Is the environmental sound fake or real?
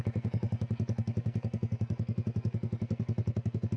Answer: fake